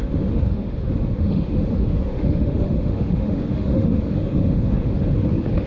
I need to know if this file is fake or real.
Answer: fake